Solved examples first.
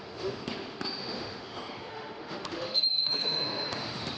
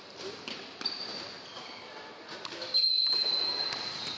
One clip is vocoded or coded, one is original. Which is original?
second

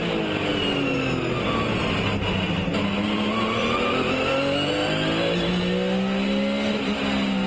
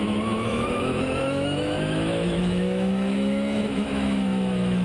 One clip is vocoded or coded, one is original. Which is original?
first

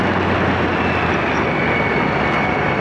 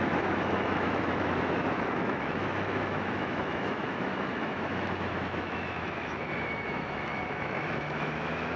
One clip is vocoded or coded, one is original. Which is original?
first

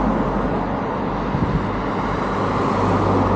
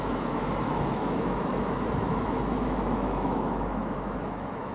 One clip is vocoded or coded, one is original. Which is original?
first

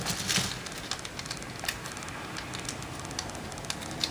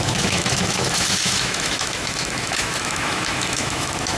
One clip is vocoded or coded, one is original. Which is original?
first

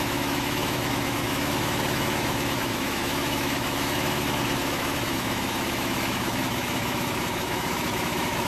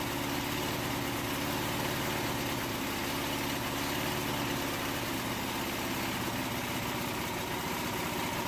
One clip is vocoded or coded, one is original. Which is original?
second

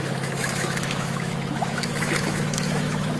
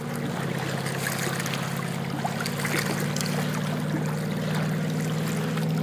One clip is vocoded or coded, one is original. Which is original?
second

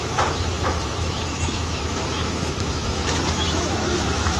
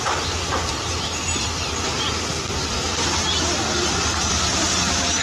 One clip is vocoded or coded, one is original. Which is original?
second